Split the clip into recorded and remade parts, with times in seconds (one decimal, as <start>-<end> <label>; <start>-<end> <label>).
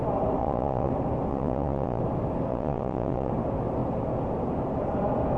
0.0-0.4 recorded; 0.4-0.9 remade; 0.9-1.3 recorded; 1.3-2.0 remade; 2.0-2.5 recorded; 2.5-3.3 remade; 3.3-5.4 recorded